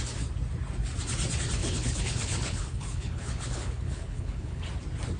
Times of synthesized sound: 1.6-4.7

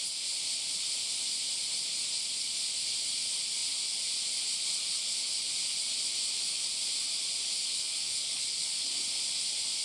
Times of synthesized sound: 7.6-8.9

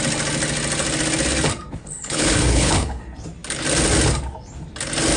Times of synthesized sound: 1.8-3.0

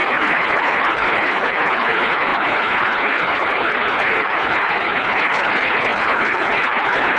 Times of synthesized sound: 0.0-7.2

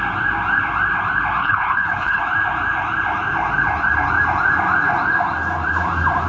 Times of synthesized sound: 1.4-2.2

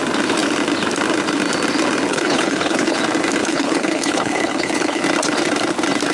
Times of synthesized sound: 2.1-3.0; 3.4-5.0

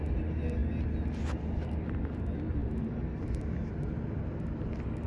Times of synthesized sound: none

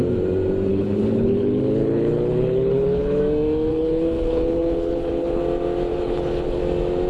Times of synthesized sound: 0.7-3.2; 3.7-5.4; 5.9-6.6